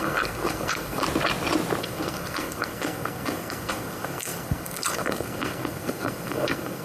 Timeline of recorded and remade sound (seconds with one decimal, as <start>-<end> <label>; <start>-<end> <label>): 0.0-1.0 remade; 1.0-1.8 recorded; 1.8-6.8 remade